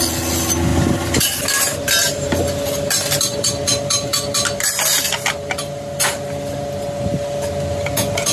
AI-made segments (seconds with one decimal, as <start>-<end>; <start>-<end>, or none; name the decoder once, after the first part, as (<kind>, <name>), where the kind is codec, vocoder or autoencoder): none